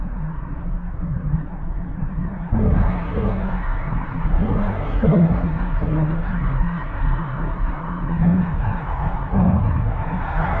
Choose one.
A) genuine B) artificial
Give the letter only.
B